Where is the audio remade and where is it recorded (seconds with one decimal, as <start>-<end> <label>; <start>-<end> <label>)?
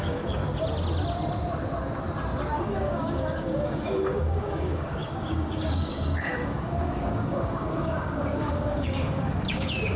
0.0-0.4 remade; 0.4-2.6 recorded; 2.6-10.0 remade